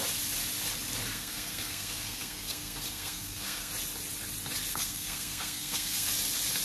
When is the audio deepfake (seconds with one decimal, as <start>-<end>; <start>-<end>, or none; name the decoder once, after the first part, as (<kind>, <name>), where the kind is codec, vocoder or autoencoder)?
1.1-3.7 (codec, SNAC); 4.7-6.1